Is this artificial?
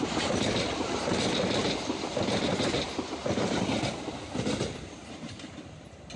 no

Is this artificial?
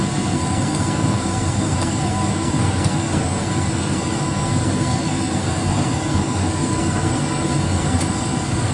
yes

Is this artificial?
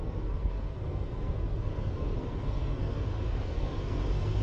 yes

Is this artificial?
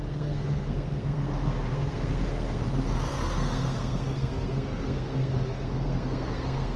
yes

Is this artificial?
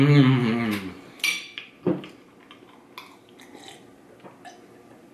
no